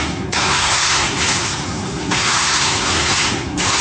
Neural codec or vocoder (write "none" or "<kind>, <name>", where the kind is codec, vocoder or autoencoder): codec, SNAC